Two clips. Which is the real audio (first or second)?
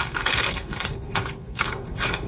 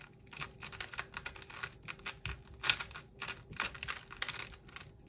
second